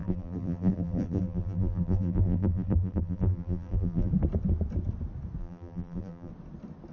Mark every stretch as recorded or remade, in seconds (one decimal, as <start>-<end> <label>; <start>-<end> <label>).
0.0-4.1 remade; 4.1-5.4 recorded; 5.4-6.3 remade; 6.3-6.9 recorded